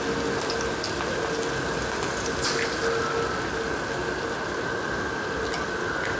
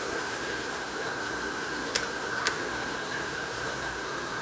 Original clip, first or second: first